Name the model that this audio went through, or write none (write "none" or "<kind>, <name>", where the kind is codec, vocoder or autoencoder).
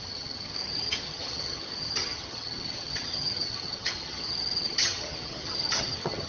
vocoder, HiFi-GAN